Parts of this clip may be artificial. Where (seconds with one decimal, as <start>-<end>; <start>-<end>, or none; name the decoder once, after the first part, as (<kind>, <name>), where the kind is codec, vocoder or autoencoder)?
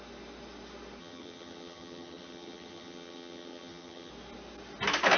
1.0-4.1 (vocoder, HiFi-GAN)